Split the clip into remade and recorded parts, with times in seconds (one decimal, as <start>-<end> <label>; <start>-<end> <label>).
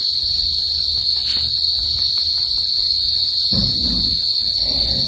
0.0-5.1 recorded